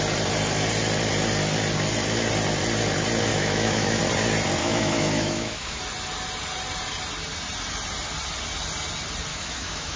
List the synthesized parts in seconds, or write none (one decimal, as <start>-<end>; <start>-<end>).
3.3-4.0; 4.6-5.8; 9.3-10.0